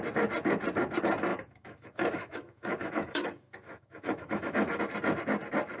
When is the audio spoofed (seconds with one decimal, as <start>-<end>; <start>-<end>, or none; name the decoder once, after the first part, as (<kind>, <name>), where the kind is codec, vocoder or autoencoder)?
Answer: 1.3-4.8 (autoencoder, DAC-VAE)